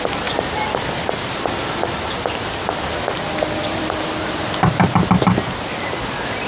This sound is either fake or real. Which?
real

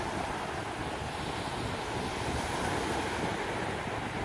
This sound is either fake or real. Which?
real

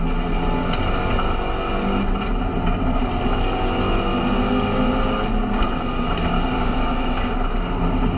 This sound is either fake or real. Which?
real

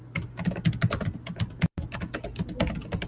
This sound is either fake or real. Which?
real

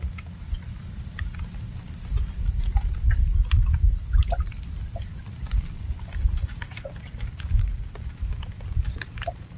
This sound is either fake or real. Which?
real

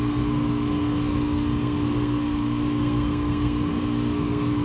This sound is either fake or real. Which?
fake